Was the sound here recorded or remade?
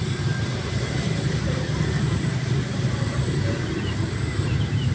remade